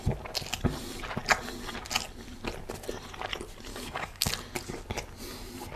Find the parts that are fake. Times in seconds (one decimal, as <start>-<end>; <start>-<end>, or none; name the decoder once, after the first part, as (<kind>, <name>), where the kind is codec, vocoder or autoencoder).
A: 3.7-4.3 (codec, DAC)